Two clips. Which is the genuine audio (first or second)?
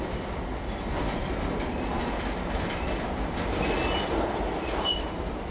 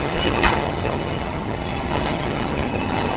first